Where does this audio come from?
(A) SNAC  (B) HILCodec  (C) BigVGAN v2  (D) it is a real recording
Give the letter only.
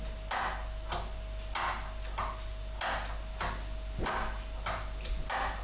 D